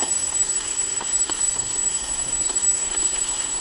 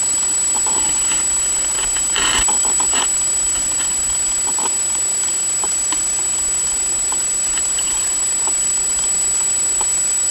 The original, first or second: second